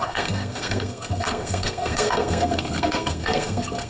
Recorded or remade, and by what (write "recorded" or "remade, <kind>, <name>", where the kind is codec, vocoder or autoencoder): remade, codec, SNAC